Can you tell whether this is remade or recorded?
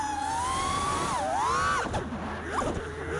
recorded